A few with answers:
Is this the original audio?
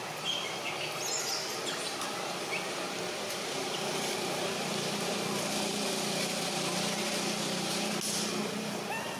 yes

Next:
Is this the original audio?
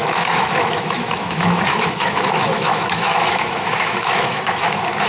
no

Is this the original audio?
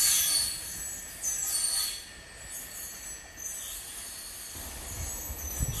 yes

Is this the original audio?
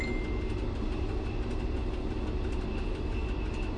yes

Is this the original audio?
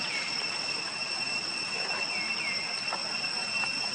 yes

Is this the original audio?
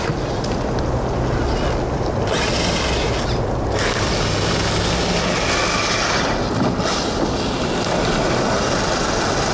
yes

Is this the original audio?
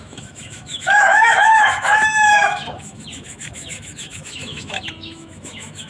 no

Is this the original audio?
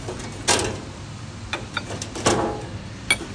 yes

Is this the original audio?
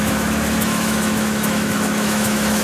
no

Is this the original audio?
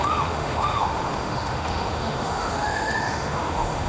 no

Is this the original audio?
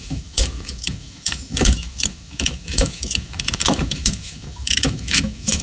no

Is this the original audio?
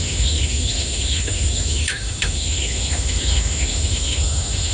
no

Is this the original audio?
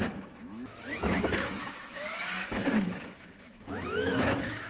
no